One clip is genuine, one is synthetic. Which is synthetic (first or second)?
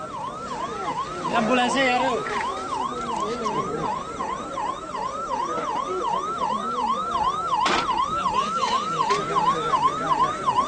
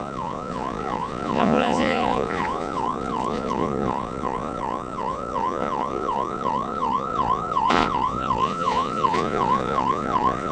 second